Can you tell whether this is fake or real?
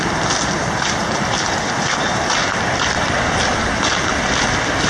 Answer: real